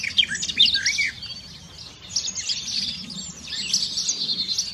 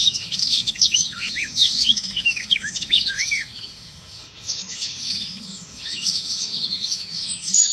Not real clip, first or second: second